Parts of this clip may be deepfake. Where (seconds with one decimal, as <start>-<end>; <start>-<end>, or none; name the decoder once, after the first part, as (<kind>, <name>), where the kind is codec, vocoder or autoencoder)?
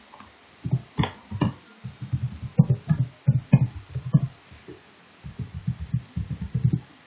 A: none